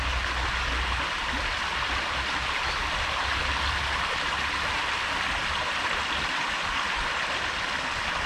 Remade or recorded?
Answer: recorded